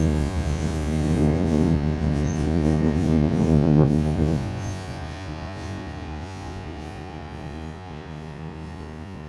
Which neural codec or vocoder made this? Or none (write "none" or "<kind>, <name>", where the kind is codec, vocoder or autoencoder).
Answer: vocoder, Vocos